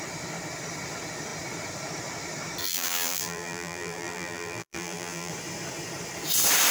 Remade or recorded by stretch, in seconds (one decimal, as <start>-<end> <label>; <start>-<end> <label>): 0.0-2.6 recorded; 2.6-5.3 remade; 5.3-6.7 recorded